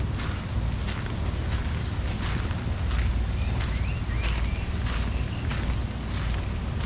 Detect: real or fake real